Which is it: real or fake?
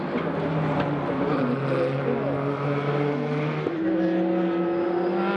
real